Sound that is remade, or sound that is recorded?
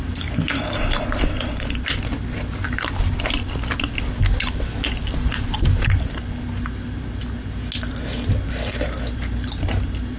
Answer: recorded